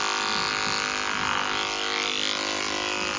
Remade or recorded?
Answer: recorded